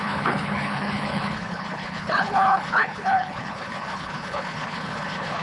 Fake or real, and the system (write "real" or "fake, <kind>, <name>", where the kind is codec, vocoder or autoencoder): fake, codec, HILCodec